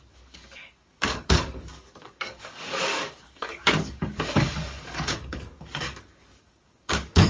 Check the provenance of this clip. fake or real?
fake